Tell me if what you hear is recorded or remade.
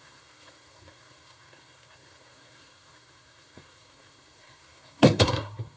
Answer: remade